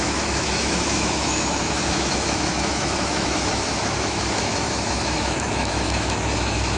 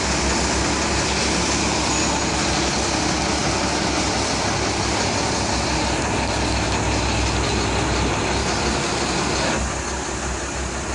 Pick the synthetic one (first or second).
first